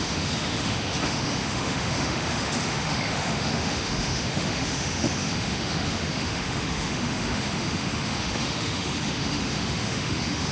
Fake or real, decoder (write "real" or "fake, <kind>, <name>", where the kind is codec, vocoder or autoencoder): fake, autoencoder, DAC-VAE